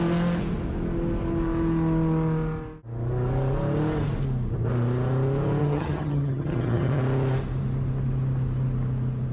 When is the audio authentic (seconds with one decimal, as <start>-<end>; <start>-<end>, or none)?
0.0-5.6; 7.0-9.3